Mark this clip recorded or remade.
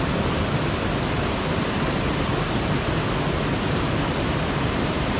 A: recorded